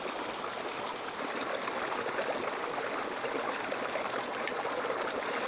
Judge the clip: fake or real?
real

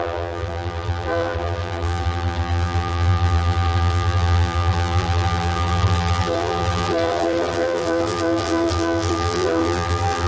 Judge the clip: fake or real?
fake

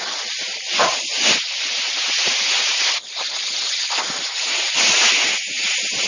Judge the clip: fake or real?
real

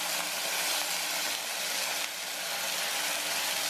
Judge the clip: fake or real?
real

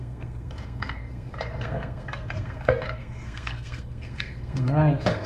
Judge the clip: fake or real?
fake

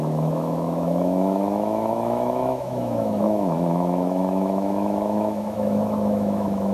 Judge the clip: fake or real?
fake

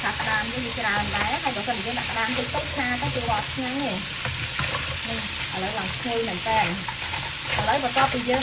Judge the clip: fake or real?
real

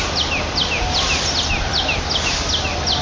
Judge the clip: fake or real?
real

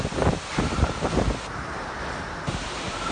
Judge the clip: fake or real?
fake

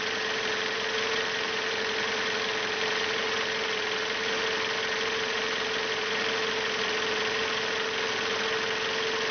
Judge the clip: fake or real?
real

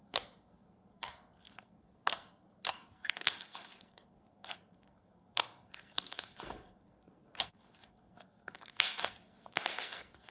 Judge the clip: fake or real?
fake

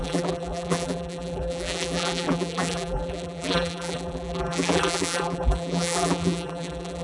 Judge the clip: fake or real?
fake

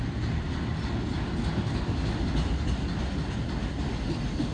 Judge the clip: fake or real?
real